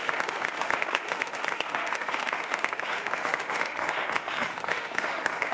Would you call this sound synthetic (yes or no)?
yes